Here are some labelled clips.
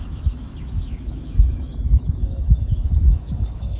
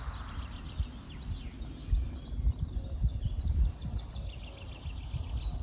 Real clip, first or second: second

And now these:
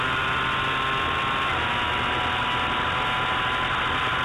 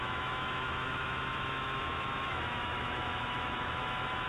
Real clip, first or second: first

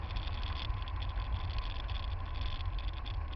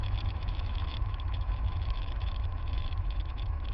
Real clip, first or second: first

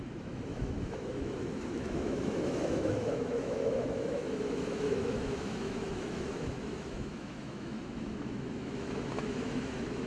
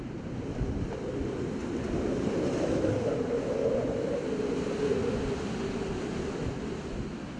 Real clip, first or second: second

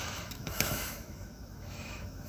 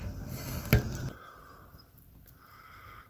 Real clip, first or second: second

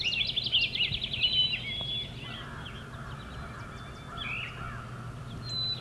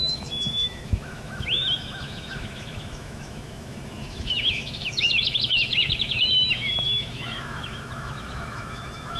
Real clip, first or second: first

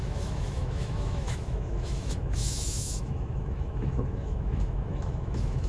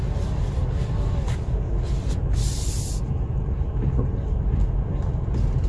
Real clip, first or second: second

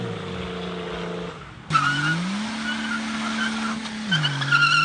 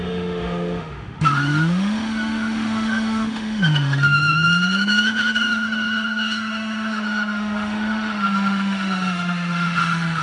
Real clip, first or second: first